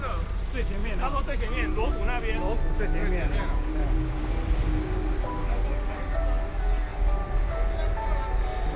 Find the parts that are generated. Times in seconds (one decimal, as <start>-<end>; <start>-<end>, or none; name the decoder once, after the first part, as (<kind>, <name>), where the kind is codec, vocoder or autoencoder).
0.8-1.9 (vocoder, Vocos); 3.0-4.2